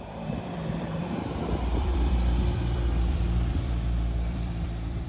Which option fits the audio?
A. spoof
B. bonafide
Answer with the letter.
A